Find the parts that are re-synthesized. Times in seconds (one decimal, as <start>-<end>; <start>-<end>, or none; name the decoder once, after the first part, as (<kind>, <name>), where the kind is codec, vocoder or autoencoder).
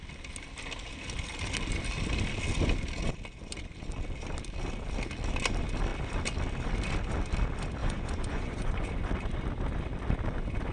7.8-8.9 (vocoder, Vocos)